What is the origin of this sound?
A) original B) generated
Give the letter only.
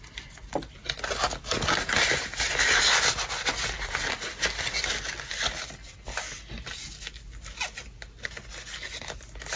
A